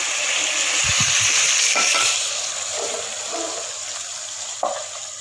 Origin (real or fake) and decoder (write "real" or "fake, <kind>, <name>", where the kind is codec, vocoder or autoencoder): real